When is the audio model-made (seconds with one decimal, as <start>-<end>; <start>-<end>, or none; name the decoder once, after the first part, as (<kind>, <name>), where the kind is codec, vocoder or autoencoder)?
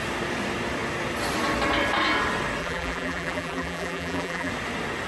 2.6-4.5 (vocoder, BigVGAN v2)